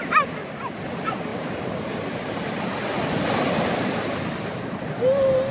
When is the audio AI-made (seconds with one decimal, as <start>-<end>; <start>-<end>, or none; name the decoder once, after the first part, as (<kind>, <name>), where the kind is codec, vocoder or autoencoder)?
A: none